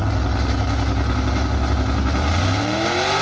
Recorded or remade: recorded